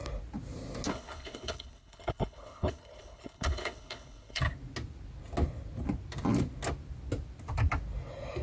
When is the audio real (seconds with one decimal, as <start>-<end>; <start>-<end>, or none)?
0.0-0.9; 4.4-8.4